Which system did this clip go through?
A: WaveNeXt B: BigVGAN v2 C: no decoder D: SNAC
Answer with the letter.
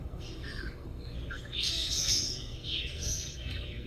D